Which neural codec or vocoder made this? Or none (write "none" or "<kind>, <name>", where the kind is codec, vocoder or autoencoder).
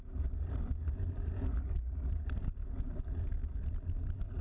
none